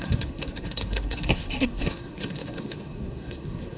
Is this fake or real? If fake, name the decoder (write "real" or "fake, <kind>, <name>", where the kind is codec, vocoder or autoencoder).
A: fake, codec, SNAC